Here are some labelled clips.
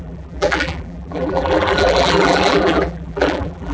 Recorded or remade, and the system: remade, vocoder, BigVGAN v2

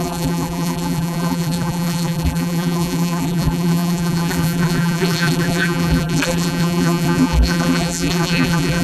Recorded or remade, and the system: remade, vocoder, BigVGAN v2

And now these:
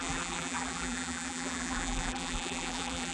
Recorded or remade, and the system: remade, vocoder, BigVGAN v2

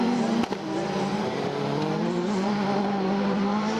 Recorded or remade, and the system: remade, vocoder, BigVGAN v2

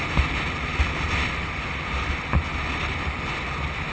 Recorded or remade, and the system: recorded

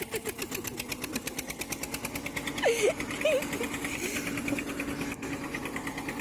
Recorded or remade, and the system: recorded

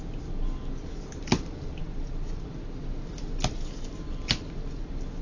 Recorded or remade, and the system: recorded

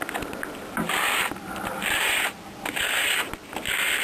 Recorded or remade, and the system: recorded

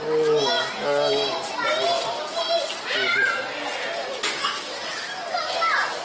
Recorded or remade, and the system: recorded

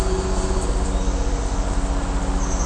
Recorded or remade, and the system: recorded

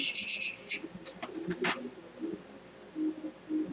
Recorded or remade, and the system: recorded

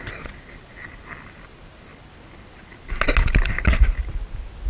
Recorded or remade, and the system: recorded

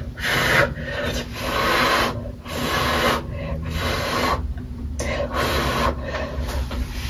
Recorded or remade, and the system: remade, vocoder, BigVGAN v2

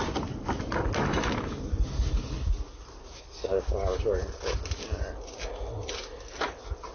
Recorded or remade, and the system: recorded